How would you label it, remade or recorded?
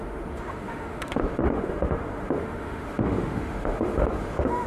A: remade